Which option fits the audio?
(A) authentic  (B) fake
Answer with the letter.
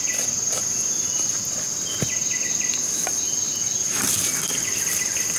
A